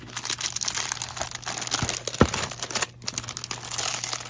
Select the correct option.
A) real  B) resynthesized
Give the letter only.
A